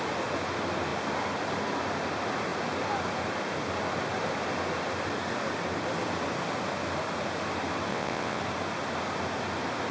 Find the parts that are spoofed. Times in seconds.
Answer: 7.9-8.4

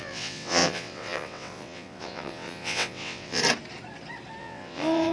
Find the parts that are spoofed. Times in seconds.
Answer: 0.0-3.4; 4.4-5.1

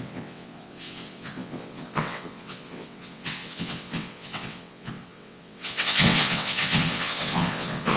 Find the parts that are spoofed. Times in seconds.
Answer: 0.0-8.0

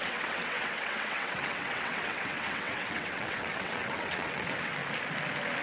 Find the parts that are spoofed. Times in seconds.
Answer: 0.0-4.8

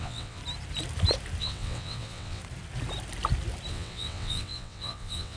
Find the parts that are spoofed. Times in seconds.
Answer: 0.0-0.4; 1.4-2.4; 3.7-5.4

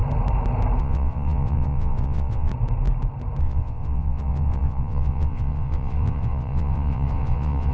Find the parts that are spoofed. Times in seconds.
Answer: 0.8-2.5; 3.4-7.7

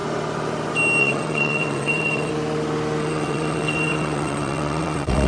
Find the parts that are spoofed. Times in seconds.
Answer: 1.0-2.3; 3.0-5.3

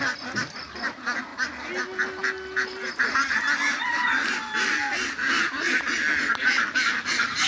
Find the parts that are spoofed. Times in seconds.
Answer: none